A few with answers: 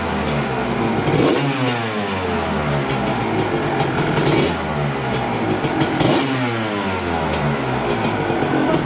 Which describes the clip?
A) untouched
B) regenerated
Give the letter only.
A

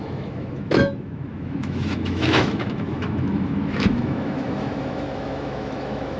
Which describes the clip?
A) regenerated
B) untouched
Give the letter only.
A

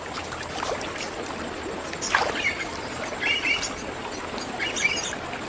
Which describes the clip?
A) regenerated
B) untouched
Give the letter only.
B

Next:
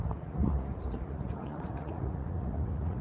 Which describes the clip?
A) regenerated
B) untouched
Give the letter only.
A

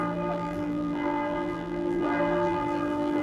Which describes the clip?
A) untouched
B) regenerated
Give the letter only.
B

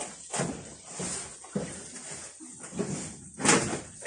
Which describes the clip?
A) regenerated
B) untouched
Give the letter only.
B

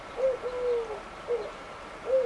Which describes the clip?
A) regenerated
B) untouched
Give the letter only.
B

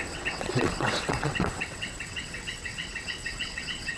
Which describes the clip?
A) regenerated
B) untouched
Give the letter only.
A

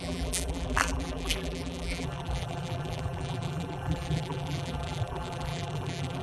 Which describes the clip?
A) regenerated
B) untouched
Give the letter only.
A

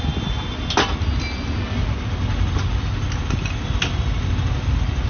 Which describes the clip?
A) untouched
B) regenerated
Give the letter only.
A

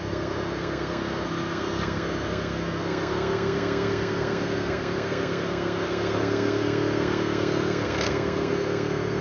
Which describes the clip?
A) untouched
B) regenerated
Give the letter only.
B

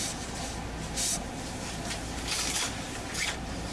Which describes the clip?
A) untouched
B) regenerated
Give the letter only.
B